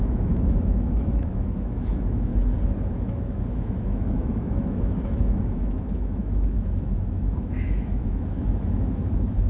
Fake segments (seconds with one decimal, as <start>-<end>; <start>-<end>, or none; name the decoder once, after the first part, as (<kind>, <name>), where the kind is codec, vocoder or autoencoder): 0.0-2.3 (autoencoder, DAC-VAE); 2.9-9.5